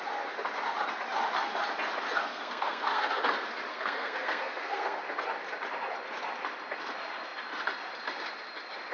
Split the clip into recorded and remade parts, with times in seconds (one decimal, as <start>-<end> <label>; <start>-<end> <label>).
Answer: 0.0-2.2 recorded; 2.2-3.2 remade; 3.2-3.7 recorded; 3.7-5.0 remade; 5.0-8.9 recorded